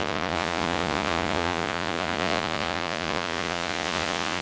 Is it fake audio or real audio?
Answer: fake